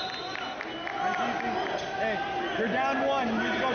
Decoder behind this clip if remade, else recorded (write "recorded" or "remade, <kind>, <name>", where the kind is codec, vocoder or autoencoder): recorded